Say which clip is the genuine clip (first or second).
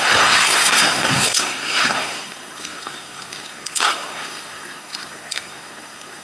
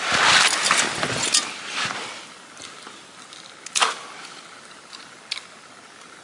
second